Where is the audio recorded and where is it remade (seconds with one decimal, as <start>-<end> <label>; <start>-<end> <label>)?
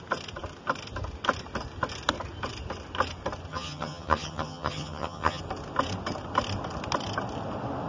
0.0-3.5 recorded; 3.5-5.4 remade; 5.4-7.9 recorded